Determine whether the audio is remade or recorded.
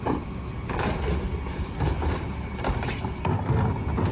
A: recorded